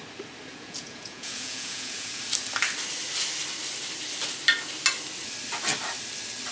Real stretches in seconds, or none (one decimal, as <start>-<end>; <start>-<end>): 0.0-0.5; 2.2-6.5